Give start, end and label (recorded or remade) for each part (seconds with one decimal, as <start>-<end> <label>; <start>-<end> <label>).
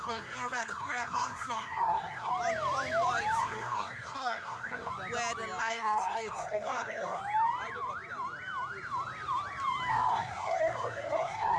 0.0-2.3 remade; 2.3-3.4 recorded; 3.4-4.9 remade; 4.9-5.6 recorded; 5.6-7.2 remade; 7.2-9.9 recorded; 9.9-11.6 remade